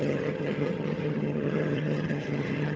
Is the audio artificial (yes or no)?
yes